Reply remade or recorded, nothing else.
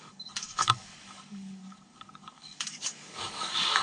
remade